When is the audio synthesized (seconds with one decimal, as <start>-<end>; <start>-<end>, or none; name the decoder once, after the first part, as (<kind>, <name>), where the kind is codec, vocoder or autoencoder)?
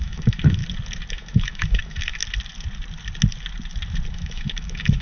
0.0-0.6 (autoencoder, DAC-VAE); 1.1-2.2; 4.1-5.0